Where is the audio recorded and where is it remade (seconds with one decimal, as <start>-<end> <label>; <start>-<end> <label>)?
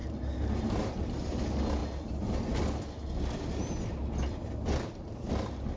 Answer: 0.0-5.8 recorded